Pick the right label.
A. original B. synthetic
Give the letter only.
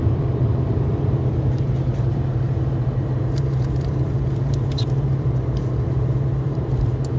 B